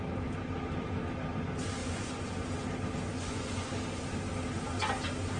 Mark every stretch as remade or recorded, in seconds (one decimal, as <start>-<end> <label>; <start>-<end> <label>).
0.0-1.8 recorded; 1.8-2.3 remade; 2.3-3.1 recorded; 3.1-3.7 remade; 3.7-5.4 recorded